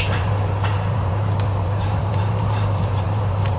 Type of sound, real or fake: fake